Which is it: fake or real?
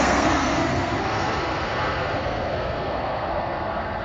fake